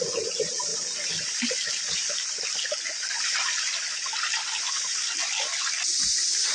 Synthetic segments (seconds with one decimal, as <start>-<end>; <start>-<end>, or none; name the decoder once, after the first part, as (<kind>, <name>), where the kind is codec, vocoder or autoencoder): none